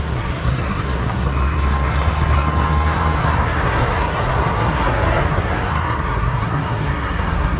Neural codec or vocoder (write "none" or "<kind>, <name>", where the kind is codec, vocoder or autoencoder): codec, SNAC